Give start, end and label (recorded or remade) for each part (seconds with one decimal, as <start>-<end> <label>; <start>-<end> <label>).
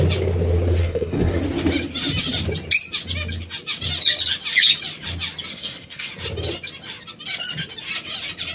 0.0-0.8 recorded; 0.8-1.4 remade; 1.4-5.5 recorded; 5.5-6.1 remade; 6.1-8.5 recorded